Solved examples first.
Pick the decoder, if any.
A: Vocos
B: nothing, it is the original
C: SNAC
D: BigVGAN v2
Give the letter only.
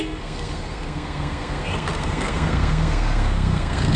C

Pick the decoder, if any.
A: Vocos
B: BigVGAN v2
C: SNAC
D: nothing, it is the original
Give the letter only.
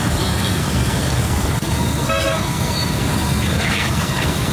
C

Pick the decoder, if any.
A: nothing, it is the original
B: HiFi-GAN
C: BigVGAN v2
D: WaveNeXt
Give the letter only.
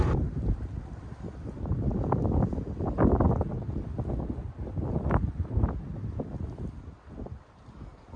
A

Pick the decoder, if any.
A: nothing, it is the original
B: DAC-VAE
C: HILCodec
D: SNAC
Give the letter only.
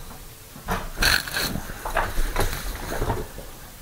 A